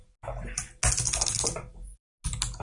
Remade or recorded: recorded